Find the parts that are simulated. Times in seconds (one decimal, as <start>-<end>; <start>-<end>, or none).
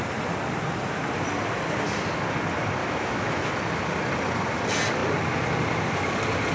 2.8-3.5